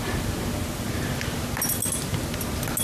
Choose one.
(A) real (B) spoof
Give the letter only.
A